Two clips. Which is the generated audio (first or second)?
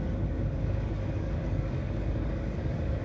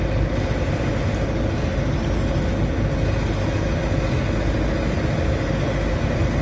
first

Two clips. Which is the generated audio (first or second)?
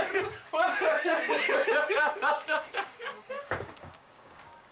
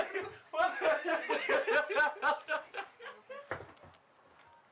first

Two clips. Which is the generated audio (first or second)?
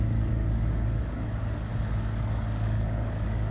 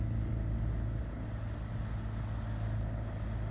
first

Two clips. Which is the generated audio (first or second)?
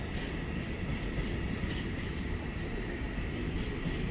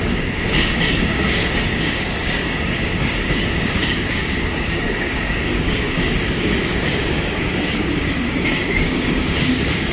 second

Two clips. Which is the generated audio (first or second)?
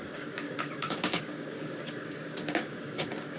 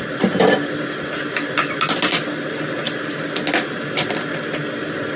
first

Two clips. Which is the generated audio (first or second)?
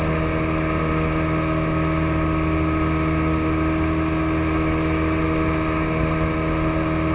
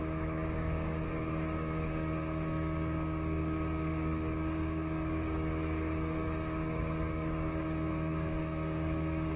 second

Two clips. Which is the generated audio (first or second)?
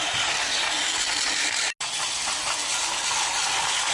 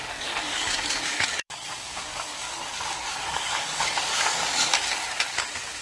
second